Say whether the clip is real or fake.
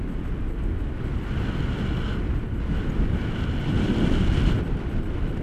real